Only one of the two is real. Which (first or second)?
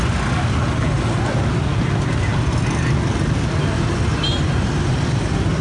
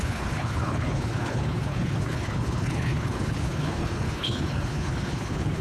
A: first